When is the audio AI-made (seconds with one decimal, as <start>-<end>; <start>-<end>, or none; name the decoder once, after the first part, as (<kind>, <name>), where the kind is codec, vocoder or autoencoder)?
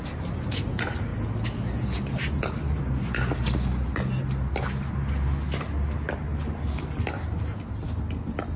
none